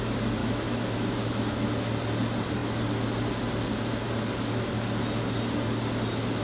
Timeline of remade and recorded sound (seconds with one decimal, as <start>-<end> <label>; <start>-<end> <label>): 0.0-0.4 recorded; 0.4-1.7 remade; 1.7-6.4 recorded